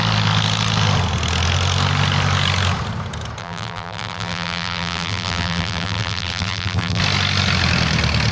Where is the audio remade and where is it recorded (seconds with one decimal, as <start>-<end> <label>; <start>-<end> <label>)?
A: 0.0-3.4 recorded; 3.4-7.0 remade; 7.0-8.3 recorded